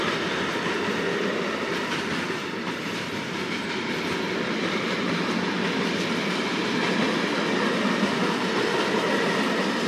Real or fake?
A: real